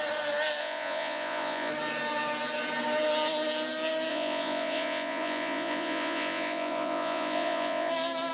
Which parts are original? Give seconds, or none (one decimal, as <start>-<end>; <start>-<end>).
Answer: 0.0-0.6; 1.7-4.1; 7.9-8.3